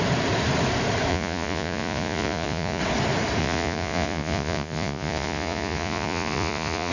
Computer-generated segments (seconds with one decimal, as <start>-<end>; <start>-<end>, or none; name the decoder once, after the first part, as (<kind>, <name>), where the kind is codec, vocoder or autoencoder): 1.1-2.8 (vocoder, Vocos); 3.4-6.9